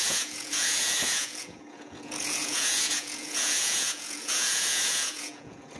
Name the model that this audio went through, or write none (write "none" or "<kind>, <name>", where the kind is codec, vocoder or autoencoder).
vocoder, Vocos